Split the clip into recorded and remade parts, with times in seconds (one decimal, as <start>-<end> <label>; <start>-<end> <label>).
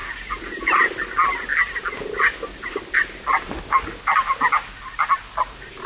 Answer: 0.0-0.7 remade; 0.7-5.9 recorded